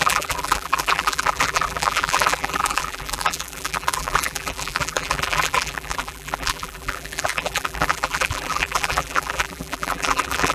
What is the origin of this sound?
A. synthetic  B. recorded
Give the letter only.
A